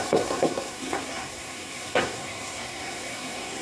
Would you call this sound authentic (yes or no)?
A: no